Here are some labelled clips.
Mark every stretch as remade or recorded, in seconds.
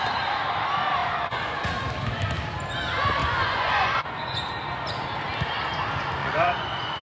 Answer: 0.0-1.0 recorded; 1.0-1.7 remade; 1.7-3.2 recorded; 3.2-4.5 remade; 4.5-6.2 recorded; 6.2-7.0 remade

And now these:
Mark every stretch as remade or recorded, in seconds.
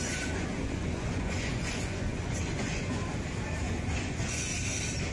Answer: 0.0-3.0 remade; 3.0-3.6 recorded; 3.6-4.5 remade; 4.5-5.1 recorded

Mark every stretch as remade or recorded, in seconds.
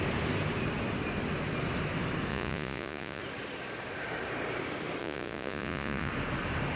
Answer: 0.0-2.3 recorded; 2.3-3.2 remade; 3.2-5.0 recorded; 5.0-6.1 remade; 6.1-6.8 recorded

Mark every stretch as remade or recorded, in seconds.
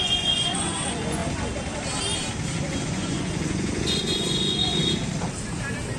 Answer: 0.0-1.2 remade; 1.2-2.8 recorded; 2.8-4.8 remade; 4.8-6.0 recorded